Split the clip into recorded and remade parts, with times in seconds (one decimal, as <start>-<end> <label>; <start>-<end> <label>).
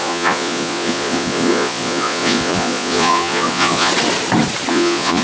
0.0-3.9 remade; 3.9-4.7 recorded; 4.7-5.2 remade